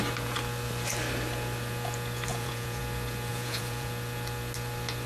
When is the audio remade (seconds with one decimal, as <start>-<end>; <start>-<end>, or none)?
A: 2.3-2.8; 3.3-3.9